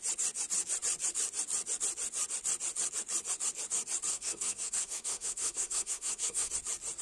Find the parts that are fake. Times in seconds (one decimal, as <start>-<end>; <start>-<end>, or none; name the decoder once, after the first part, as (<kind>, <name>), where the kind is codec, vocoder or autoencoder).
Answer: 4.1-6.5 (codec, SNAC)